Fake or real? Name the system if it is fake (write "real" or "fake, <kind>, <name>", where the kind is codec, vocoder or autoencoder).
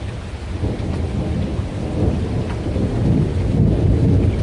real